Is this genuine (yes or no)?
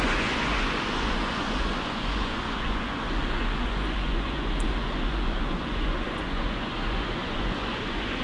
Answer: no